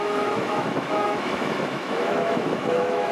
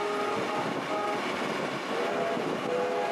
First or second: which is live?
second